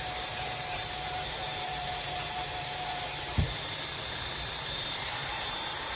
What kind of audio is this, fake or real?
fake